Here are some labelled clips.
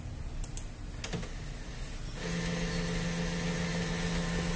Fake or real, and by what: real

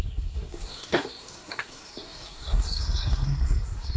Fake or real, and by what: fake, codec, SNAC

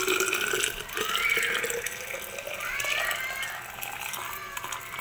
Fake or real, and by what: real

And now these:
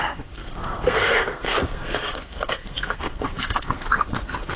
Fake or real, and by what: fake, codec, SNAC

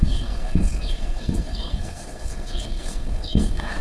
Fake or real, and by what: fake, codec, SNAC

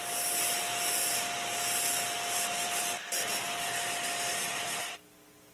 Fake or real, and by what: real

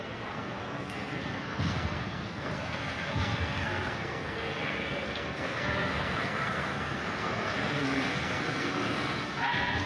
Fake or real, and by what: fake, codec, SNAC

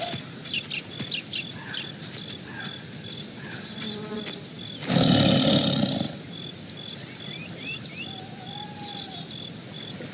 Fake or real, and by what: real